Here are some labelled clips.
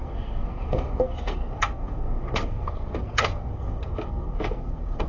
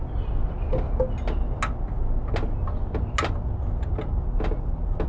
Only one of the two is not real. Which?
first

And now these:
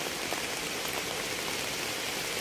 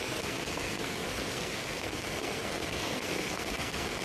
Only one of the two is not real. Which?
second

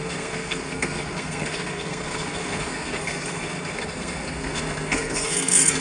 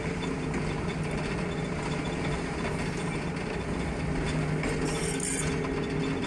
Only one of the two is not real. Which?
first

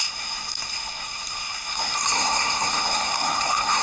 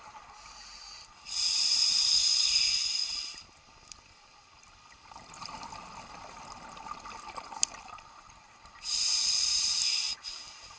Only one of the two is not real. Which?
first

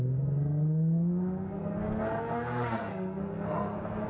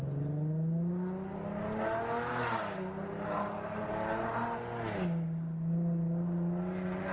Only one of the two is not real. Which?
first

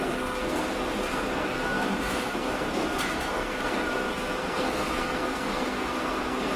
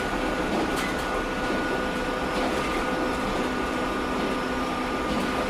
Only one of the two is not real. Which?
first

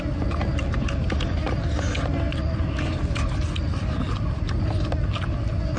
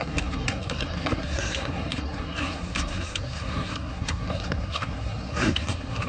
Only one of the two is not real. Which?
second